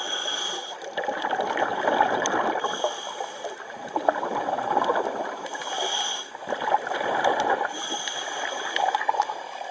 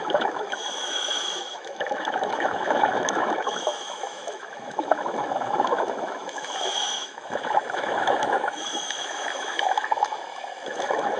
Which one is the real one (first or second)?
first